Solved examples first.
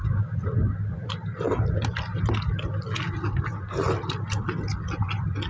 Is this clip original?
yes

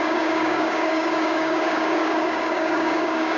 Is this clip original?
no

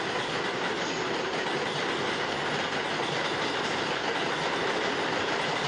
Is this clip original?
yes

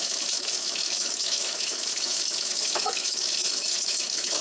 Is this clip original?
no